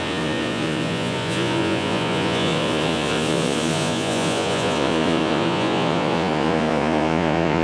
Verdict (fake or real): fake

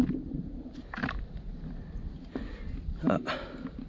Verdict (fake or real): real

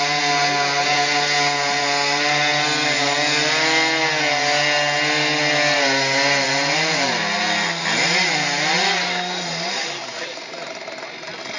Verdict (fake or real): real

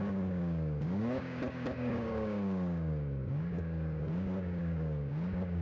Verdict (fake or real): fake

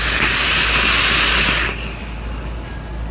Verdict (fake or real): real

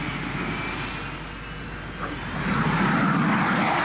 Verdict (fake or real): real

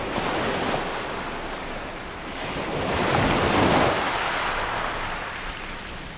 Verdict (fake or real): real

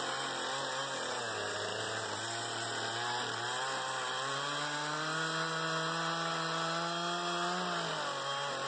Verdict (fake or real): real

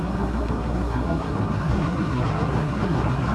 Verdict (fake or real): fake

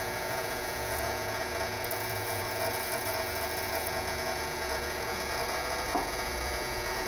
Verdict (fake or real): fake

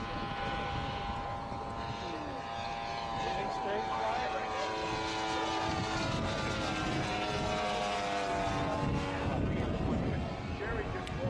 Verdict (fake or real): real